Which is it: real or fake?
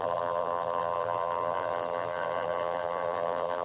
fake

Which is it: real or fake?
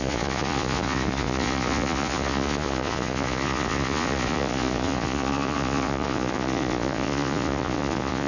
fake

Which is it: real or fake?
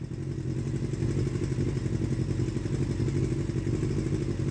real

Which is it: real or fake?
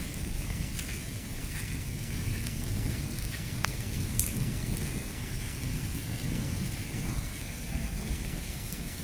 fake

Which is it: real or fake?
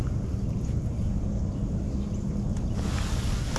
real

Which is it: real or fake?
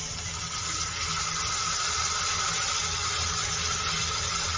real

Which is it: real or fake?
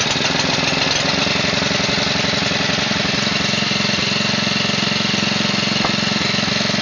real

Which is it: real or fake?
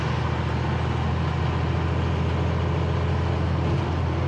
real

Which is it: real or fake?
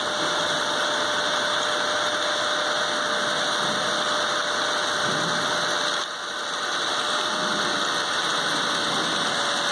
real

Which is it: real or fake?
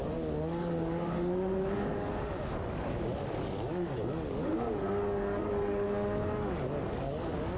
fake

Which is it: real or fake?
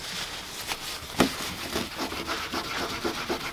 real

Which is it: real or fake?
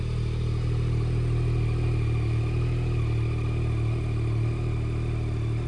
real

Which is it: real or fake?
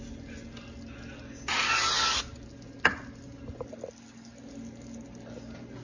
real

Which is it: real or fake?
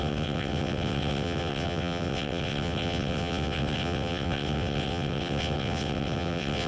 fake